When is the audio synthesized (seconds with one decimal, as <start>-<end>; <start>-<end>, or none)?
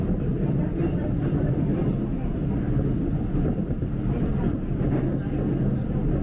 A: none